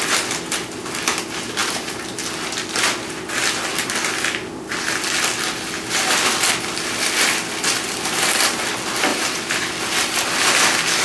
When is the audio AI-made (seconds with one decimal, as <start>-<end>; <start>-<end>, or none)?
1.6-2.1; 9.1-9.7

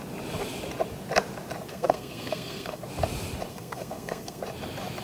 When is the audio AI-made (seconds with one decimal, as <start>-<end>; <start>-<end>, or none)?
1.7-2.8; 3.5-4.4

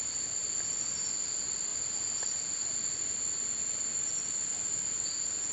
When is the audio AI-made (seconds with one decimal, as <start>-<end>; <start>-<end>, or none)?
none

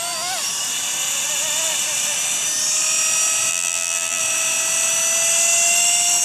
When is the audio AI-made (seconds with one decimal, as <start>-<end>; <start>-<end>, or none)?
3.5-4.2

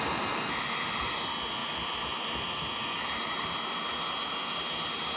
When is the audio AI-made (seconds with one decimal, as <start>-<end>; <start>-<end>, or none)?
none

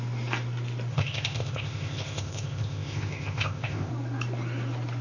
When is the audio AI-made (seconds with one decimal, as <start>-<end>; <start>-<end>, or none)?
0.9-3.9